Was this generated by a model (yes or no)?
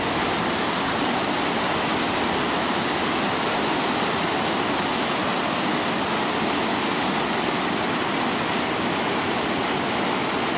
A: no